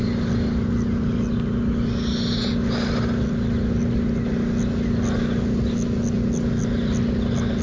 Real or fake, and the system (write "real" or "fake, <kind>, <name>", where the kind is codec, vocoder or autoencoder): real